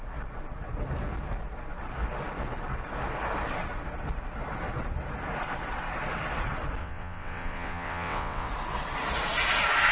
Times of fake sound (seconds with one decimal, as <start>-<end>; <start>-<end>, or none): 6.8-8.5